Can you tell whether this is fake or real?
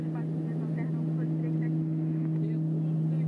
real